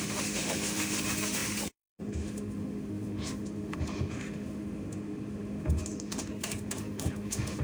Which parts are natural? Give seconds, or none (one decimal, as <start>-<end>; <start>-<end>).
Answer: none